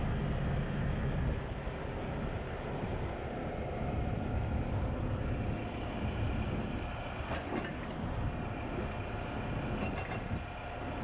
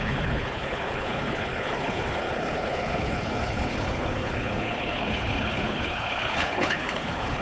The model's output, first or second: second